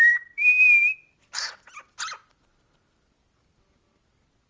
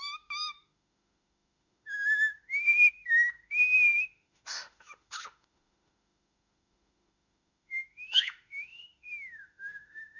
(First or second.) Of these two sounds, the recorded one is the first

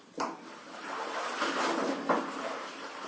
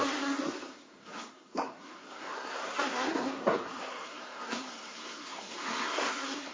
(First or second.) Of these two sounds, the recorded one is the first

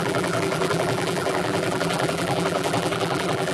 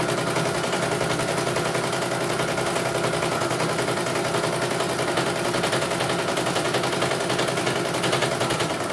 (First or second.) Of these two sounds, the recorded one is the second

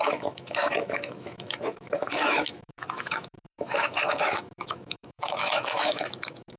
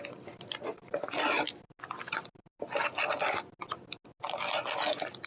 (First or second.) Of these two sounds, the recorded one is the second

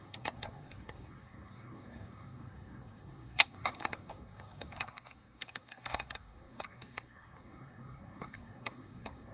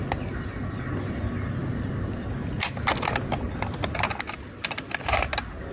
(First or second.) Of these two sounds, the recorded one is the second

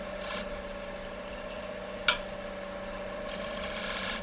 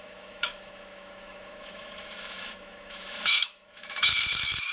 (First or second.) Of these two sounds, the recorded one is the first